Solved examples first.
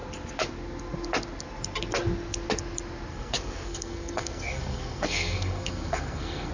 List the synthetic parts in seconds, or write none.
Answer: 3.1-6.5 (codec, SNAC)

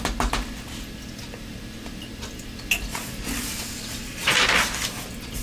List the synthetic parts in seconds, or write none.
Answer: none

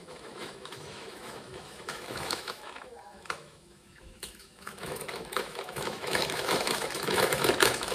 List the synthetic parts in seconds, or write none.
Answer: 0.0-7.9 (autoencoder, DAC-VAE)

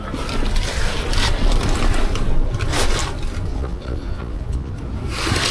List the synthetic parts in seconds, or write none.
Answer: 3.5-4.7 (vocoder, Vocos)

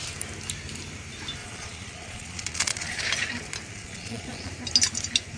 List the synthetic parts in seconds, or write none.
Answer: 1.4-3.0 (vocoder, Vocos); 3.7-4.5

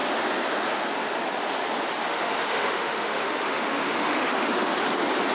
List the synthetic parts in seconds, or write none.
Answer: 2.0-4.8 (autoencoder, DAC-VAE)